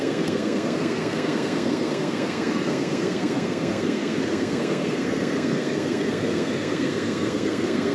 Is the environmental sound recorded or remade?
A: remade